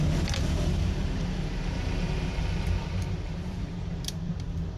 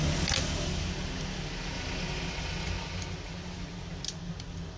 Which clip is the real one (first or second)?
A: second